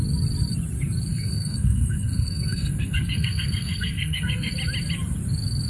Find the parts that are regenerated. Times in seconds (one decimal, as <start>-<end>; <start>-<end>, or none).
1.1-4.5